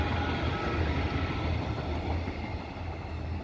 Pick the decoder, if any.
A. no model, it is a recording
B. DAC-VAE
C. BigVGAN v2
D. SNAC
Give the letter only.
A